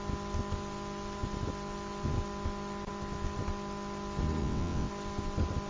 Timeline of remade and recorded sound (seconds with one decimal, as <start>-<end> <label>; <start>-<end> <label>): 0.0-4.4 recorded; 4.4-4.9 remade; 4.9-5.7 recorded